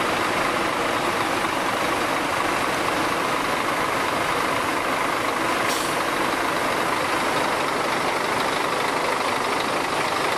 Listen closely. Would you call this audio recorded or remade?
recorded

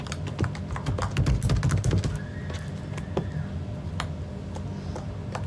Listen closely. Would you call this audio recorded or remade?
recorded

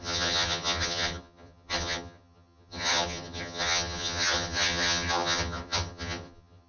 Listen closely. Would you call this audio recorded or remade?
remade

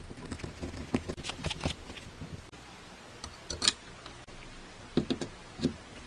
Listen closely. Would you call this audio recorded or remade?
recorded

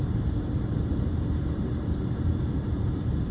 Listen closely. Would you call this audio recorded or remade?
remade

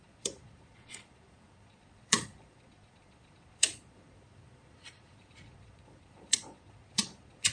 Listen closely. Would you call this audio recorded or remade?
remade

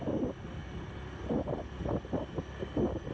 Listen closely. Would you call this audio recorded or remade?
recorded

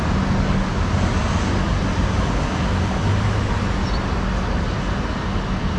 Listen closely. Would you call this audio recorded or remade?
recorded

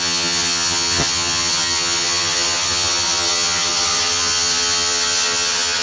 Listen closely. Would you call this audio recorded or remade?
remade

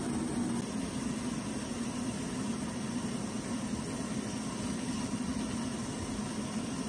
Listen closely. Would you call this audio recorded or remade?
recorded